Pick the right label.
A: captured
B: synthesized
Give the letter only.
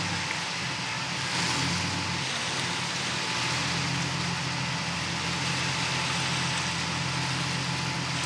A